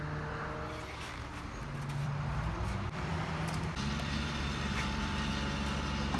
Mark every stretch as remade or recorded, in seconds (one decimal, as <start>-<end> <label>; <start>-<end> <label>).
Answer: 0.0-2.0 recorded; 2.0-5.3 remade; 5.3-6.2 recorded